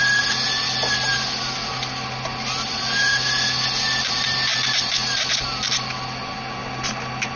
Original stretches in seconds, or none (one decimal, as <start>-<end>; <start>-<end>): 0.0-7.4